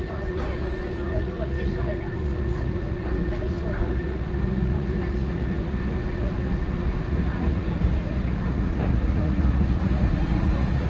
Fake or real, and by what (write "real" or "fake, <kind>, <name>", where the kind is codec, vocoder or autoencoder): fake, vocoder, Vocos